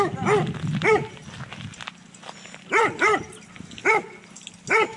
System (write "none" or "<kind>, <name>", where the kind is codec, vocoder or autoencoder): none